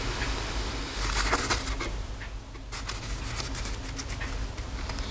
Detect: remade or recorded recorded